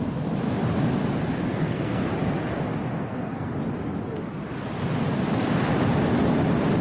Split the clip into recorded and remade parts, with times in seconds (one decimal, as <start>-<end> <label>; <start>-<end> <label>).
0.0-1.5 recorded; 1.5-2.1 remade; 2.1-2.9 recorded; 2.9-3.5 remade; 3.5-6.8 recorded